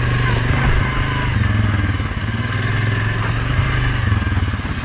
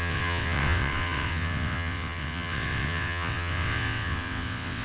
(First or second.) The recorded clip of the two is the first